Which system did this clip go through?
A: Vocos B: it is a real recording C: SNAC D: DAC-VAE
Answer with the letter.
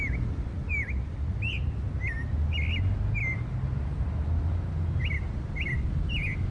B